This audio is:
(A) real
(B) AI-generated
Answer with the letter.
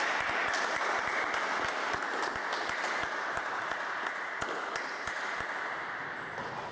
A